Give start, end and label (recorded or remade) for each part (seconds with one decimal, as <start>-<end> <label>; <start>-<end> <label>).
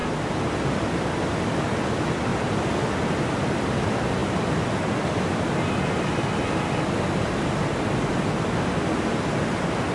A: 0.0-9.9 recorded